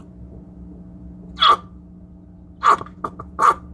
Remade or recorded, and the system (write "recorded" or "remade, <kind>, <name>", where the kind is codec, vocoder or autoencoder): recorded